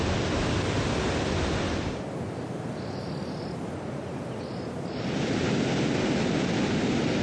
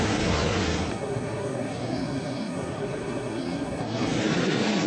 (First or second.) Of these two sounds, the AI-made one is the second